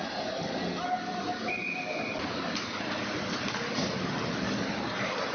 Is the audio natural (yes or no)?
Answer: yes